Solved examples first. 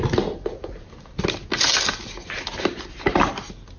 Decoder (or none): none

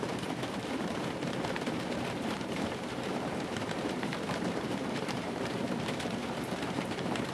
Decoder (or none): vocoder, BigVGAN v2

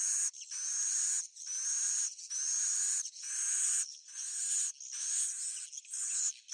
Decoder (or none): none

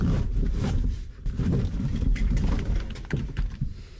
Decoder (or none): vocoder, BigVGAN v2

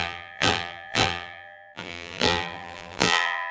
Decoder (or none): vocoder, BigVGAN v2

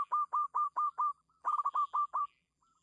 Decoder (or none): vocoder, BigVGAN v2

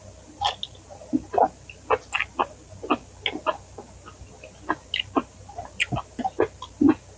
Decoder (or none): none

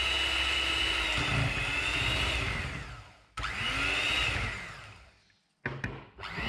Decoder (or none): none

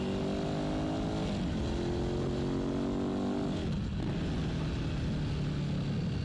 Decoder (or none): none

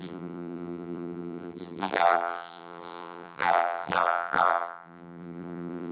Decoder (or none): vocoder, BigVGAN v2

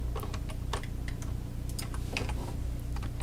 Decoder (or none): none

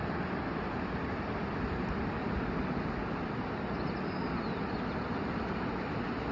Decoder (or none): none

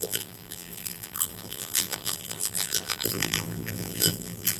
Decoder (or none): vocoder, BigVGAN v2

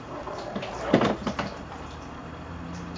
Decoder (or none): vocoder, BigVGAN v2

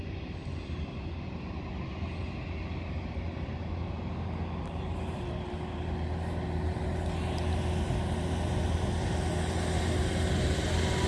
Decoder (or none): none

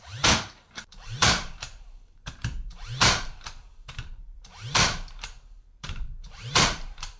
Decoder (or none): vocoder, BigVGAN v2